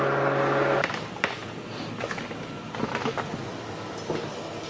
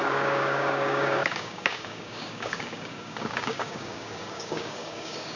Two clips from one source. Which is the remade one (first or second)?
second